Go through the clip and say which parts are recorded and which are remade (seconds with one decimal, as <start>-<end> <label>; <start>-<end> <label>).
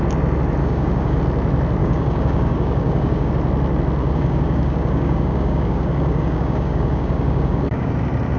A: 0.0-0.6 recorded; 0.6-1.2 remade; 1.2-1.8 recorded; 1.8-3.3 remade; 3.3-4.0 recorded; 4.0-7.9 remade; 7.9-8.4 recorded